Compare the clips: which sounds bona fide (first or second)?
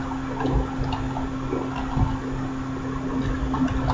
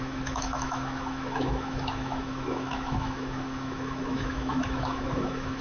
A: first